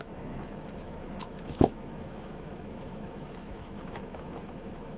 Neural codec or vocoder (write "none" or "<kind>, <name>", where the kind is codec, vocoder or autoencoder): autoencoder, DAC-VAE